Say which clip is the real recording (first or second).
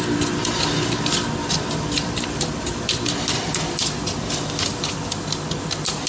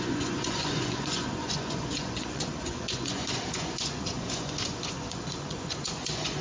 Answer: first